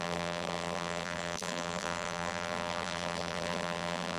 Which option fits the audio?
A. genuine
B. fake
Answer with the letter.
B